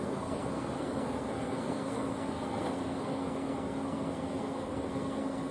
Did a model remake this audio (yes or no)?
yes